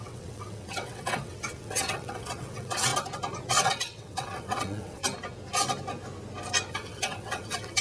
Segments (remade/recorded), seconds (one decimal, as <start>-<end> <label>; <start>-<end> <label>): 0.0-2.9 remade; 2.9-3.5 recorded; 3.5-5.0 remade; 5.0-6.7 recorded; 6.7-7.8 remade